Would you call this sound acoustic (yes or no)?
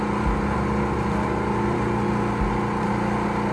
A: yes